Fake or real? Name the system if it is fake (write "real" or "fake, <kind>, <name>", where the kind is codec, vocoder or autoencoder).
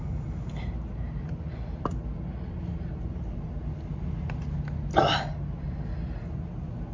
real